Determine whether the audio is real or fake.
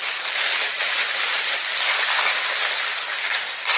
real